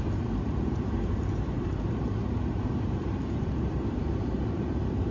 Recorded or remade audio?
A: remade